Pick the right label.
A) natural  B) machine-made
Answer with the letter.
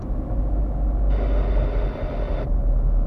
A